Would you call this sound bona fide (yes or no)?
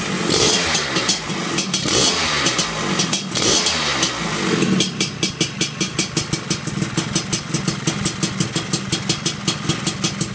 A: yes